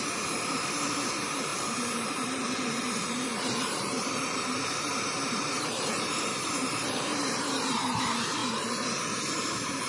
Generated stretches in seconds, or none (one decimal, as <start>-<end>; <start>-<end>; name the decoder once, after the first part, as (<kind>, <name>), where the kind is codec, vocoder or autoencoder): 0.0-8.4 (vocoder, BigVGAN v2); 9.2-9.9